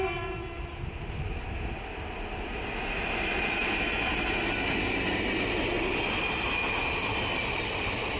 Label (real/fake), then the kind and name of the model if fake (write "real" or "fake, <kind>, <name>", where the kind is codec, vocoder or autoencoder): real